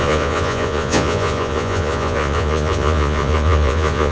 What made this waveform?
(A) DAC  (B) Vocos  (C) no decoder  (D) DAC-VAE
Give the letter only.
B